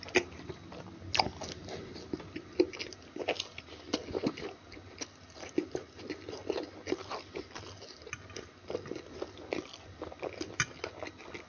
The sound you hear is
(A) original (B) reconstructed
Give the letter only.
A